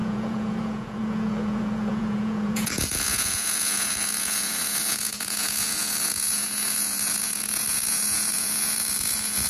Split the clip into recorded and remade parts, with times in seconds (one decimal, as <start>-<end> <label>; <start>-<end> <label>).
0.0-9.5 remade